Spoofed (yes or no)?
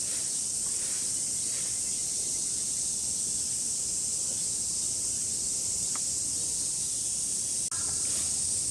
no